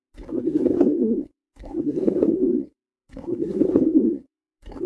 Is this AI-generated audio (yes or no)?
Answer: yes